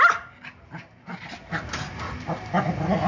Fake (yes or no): no